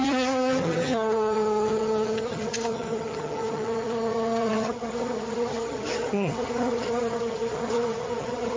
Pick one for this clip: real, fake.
fake